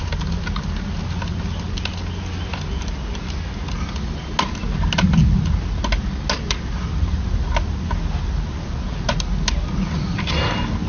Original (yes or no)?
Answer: yes